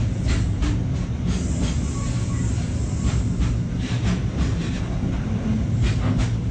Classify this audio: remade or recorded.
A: recorded